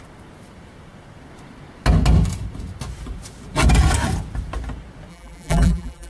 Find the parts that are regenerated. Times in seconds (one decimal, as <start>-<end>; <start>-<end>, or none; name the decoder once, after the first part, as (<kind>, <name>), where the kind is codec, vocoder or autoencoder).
5.1-6.1 (vocoder, BigVGAN v2)